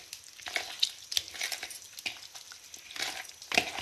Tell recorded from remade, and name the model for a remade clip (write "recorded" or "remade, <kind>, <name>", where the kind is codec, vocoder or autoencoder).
recorded